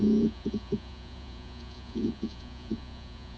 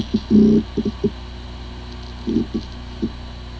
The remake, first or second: first